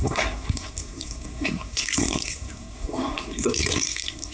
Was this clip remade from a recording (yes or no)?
yes